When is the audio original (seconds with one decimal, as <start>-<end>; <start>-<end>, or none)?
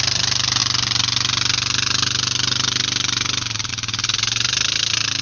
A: 0.0-5.2